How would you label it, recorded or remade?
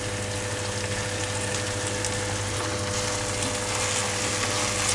recorded